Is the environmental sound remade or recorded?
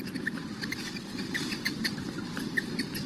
recorded